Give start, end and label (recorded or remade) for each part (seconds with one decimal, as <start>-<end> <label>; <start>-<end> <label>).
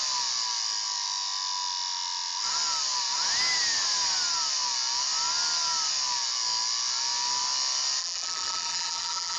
0.0-8.0 recorded; 8.0-9.4 remade